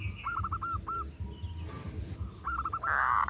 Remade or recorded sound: recorded